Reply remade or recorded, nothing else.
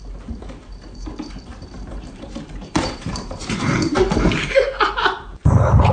remade